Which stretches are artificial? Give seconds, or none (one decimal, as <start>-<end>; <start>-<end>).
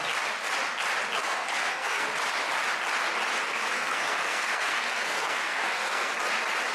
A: 1.2-2.1; 3.5-6.1